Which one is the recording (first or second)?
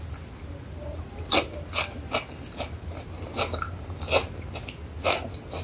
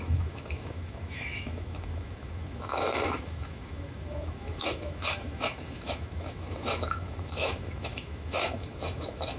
first